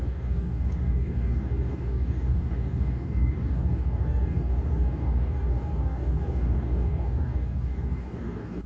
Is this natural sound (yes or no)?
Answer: no